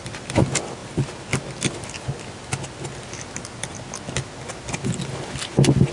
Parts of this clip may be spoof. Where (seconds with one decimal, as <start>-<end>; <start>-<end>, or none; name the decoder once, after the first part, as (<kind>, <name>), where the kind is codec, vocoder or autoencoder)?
none